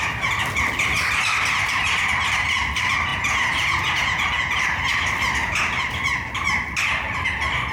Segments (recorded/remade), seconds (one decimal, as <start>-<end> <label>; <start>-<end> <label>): 0.0-3.1 recorded; 3.1-4.5 remade; 4.5-7.7 recorded